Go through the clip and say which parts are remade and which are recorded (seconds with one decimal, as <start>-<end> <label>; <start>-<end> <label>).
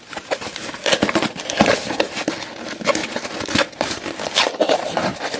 0.0-5.4 recorded